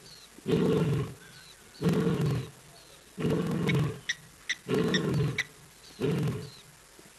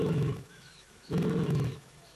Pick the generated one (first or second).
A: second